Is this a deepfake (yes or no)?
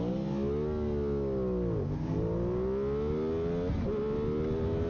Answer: no